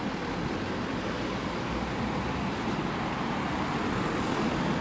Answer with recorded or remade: recorded